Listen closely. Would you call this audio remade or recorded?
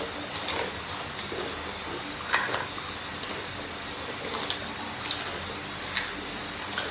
recorded